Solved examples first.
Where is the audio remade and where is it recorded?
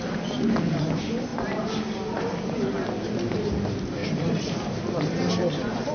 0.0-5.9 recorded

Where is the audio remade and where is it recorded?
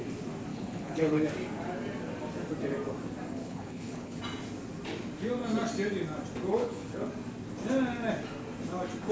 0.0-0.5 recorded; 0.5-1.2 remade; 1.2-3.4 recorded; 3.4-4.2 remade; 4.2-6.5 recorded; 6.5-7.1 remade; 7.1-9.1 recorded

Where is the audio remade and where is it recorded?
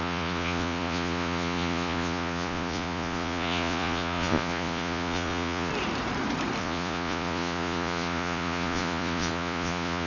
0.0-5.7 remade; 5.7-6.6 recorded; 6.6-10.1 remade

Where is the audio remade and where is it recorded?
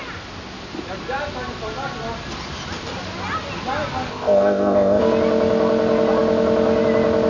0.0-4.1 recorded; 4.1-5.0 remade; 5.0-7.3 recorded